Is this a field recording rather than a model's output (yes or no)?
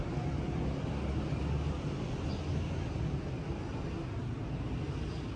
yes